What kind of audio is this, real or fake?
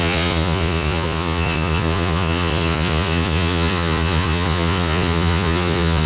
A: fake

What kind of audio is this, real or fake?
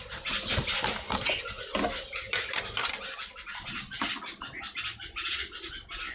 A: real